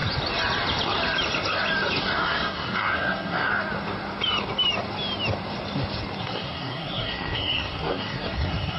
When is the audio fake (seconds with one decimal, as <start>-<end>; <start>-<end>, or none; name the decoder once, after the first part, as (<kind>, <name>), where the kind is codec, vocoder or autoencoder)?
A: 2.0-3.5 (codec, SNAC); 6.2-8.8